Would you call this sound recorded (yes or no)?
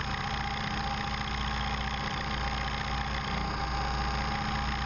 yes